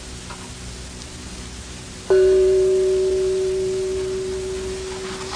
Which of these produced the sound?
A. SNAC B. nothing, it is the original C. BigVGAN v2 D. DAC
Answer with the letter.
B